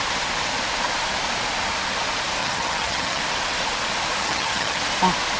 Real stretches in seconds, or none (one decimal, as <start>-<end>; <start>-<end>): 0.0-2.4; 3.2-4.2; 4.8-5.4